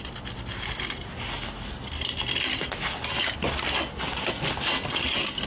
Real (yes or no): yes